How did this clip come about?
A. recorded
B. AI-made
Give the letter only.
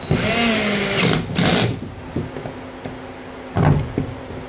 A